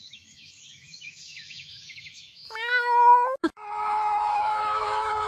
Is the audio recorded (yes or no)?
no